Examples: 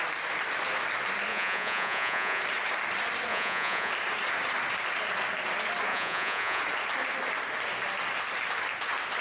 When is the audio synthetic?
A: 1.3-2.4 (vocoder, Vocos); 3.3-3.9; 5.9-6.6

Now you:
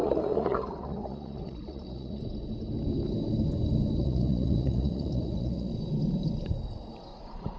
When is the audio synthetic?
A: 0.0-2.2 (vocoder, Vocos); 4.0-5.7; 7.1-7.6

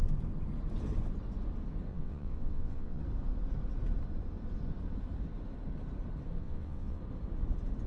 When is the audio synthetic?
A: 1.9-3.0 (vocoder, WaveNeXt); 6.4-7.0